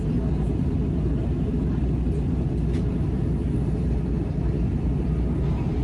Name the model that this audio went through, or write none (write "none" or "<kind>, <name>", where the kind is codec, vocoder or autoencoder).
none